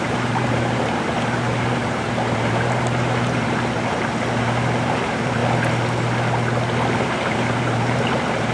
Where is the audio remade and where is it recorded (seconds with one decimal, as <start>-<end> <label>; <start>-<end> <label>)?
0.0-5.4 remade; 5.4-7.0 recorded; 7.0-8.5 remade